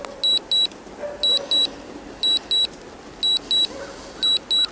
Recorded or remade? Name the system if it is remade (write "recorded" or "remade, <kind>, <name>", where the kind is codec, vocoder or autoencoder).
recorded